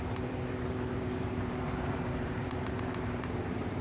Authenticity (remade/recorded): remade